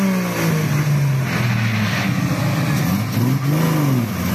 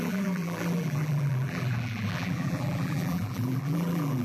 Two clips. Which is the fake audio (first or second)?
second